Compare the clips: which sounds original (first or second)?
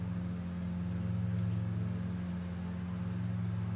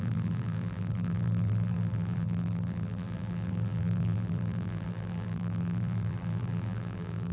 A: first